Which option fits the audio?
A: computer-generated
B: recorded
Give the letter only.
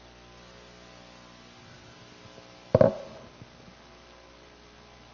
B